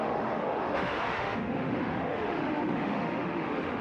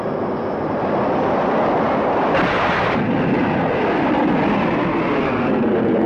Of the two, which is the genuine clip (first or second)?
second